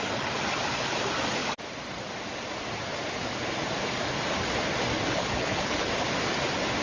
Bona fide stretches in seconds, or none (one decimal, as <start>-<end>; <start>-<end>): 0.0-5.2; 5.9-6.8